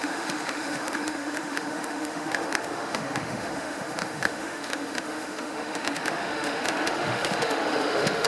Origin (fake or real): fake